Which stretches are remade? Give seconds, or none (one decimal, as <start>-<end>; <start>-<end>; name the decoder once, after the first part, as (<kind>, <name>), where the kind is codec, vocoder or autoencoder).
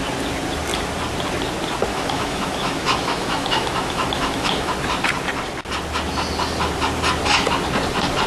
1.9-4.7 (autoencoder, DAC-VAE)